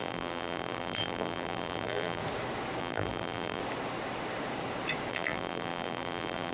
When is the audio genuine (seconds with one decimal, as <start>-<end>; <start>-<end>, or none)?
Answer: 2.2-2.8; 3.6-5.1